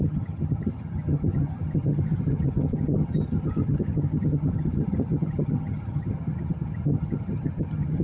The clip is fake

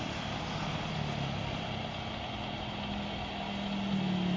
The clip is real